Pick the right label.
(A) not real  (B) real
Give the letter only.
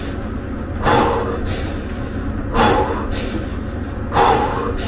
B